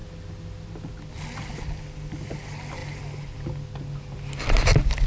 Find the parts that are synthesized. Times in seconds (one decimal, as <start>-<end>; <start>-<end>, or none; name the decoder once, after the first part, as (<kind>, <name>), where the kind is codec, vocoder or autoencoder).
none